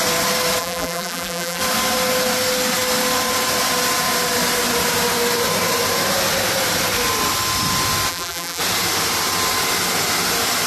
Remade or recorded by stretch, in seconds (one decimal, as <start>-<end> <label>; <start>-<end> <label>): 0.0-0.6 recorded; 0.6-1.6 remade; 1.6-8.1 recorded; 8.1-8.6 remade; 8.6-10.7 recorded